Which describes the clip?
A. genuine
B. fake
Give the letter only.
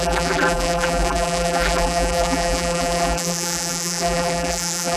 B